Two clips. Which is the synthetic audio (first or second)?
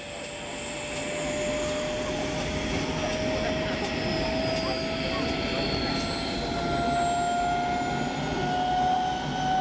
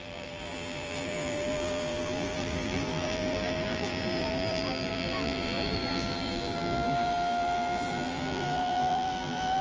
second